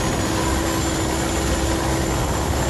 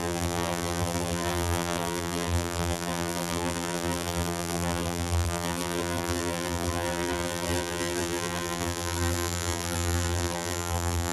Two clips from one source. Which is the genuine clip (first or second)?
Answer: first